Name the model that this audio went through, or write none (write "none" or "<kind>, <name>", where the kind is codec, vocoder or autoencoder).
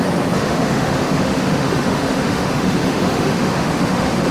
autoencoder, DAC-VAE